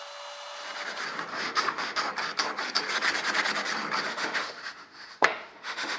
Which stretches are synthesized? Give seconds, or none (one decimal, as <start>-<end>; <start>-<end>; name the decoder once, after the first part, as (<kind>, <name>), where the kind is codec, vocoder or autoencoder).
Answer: 1.3-2.1 (autoencoder, DAC-VAE); 4.1-6.0